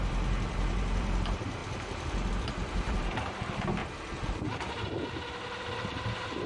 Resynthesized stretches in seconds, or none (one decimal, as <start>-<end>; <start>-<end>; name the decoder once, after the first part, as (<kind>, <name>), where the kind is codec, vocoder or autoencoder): 0.0-3.8 (vocoder, BigVGAN v2); 5.1-6.5